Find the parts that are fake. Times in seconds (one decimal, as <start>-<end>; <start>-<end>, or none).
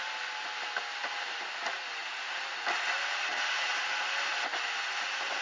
none